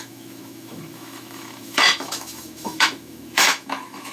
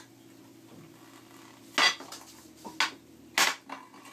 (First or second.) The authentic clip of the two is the second